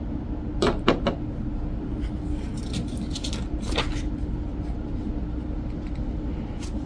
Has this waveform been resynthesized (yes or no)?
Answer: no